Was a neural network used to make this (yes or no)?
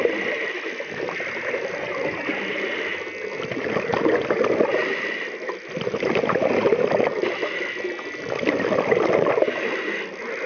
no